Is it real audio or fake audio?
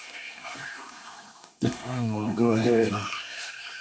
fake